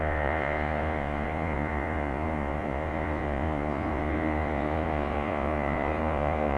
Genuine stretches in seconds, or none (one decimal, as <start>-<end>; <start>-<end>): none